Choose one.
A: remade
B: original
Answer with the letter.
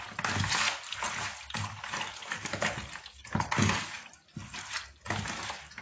B